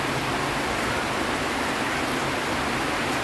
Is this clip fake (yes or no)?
no